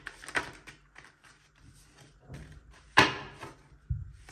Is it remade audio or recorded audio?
recorded